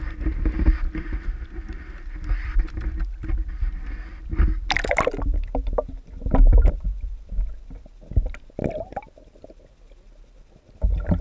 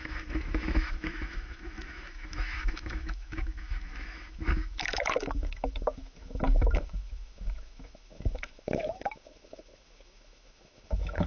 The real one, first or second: first